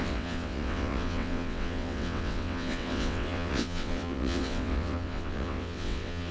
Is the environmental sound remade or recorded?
remade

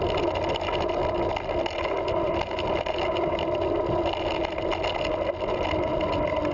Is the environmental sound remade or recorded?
recorded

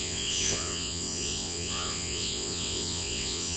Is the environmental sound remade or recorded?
remade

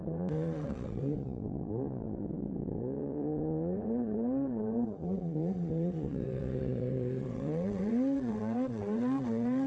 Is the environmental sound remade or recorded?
remade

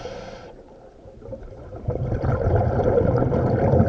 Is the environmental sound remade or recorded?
recorded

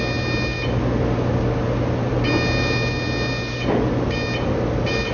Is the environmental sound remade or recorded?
recorded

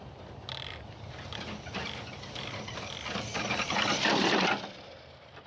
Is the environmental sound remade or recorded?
recorded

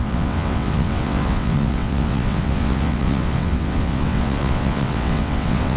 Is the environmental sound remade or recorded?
remade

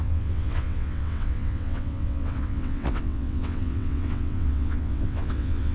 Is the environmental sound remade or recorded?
remade